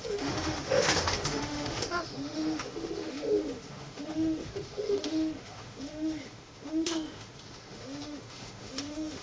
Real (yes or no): no